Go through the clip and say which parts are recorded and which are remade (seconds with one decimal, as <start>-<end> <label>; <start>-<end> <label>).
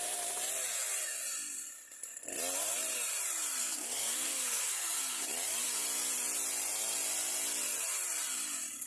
0.0-3.6 recorded; 3.6-5.2 remade; 5.2-8.9 recorded